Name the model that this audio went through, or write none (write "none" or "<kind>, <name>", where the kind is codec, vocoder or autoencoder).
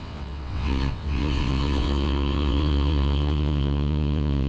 vocoder, WaveNeXt